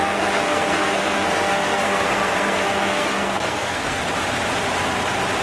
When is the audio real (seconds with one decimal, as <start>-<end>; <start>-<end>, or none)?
4.0-5.4